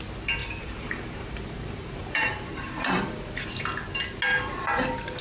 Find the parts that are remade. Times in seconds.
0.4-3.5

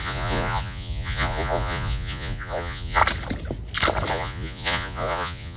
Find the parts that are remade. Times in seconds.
0.0-3.0; 4.1-5.6

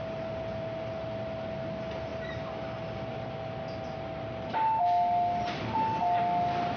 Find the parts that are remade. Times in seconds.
none

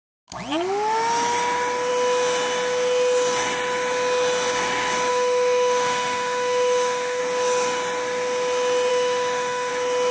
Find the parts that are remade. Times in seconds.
5.1-7.2; 8.9-9.7

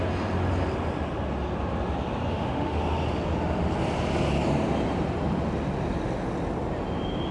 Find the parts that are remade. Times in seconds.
2.3-2.8

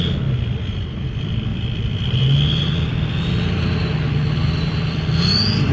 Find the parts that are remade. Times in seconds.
1.5-3.1; 4.4-5.7

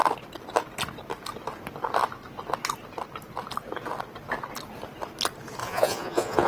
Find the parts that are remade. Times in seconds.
5.6-6.5